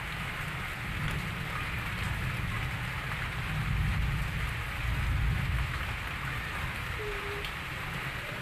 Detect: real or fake real